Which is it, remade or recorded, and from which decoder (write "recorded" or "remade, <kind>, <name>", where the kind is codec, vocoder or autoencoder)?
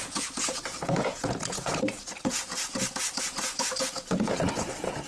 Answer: remade, vocoder, Vocos